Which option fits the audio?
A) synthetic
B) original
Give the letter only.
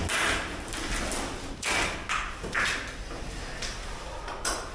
B